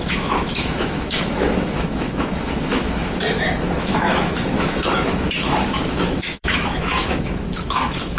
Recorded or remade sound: remade